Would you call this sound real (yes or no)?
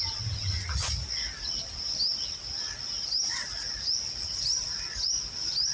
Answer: yes